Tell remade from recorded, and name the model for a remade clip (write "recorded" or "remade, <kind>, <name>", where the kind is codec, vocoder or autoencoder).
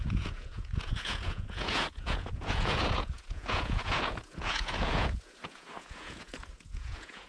remade, vocoder, Vocos